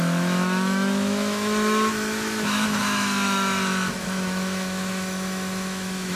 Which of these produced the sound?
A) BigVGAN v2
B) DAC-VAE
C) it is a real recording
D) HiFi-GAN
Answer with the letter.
B